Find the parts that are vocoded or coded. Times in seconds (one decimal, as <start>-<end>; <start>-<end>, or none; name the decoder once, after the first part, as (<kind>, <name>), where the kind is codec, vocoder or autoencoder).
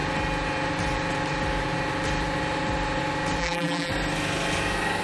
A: 3.4-3.9 (vocoder, BigVGAN v2)